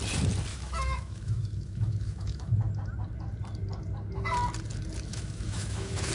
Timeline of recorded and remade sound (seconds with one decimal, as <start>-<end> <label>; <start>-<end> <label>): 0.0-0.5 recorded; 0.5-2.7 remade; 2.7-5.1 recorded; 5.1-6.1 remade